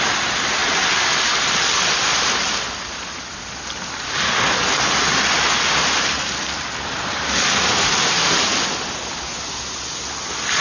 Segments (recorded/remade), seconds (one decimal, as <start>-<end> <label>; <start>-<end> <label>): 0.0-10.6 recorded